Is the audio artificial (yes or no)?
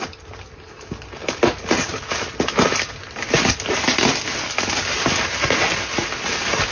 no